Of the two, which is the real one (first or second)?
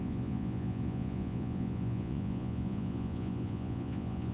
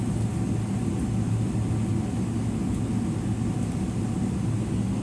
second